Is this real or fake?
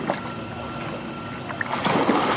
real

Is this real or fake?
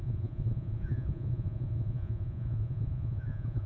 fake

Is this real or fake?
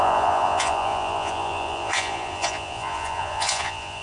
fake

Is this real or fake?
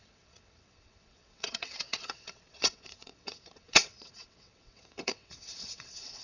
fake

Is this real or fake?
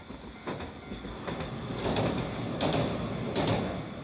real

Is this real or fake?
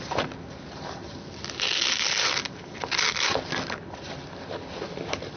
fake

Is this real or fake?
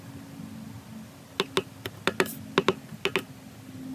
real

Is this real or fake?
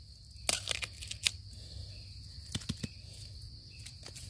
real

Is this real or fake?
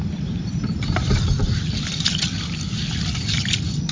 real